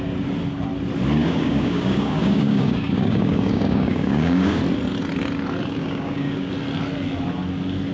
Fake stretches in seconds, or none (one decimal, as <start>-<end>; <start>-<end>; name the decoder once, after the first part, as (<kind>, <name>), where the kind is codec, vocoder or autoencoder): 1.2-4.6 (codec, DAC); 5.8-6.5